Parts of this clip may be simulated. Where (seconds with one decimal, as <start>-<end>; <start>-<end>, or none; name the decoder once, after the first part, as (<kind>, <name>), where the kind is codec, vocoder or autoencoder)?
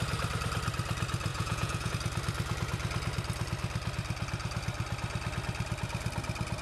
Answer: 1.3-1.9 (vocoder, Vocos)